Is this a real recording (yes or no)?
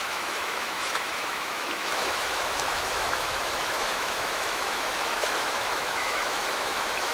no